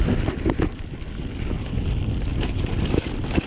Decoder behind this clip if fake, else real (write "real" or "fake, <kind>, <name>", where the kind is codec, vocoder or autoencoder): real